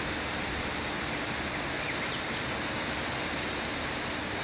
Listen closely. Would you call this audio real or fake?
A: real